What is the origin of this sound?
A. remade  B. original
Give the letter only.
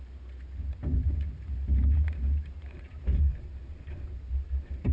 B